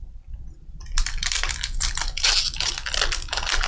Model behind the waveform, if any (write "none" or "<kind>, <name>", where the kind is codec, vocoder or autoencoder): vocoder, BigVGAN v2